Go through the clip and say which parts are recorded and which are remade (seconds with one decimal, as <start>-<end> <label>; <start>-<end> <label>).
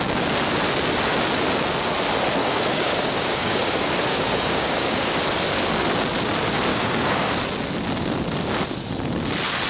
0.0-2.4 recorded; 2.4-5.1 remade; 5.1-6.7 recorded; 6.7-7.4 remade; 7.4-9.7 recorded